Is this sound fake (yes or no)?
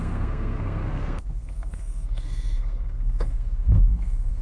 yes